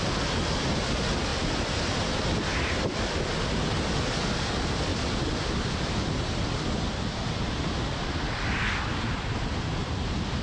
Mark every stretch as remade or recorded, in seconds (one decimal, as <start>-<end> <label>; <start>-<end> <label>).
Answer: 0.0-4.9 recorded; 4.9-6.9 remade; 6.9-10.4 recorded